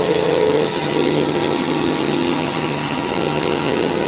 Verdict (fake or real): fake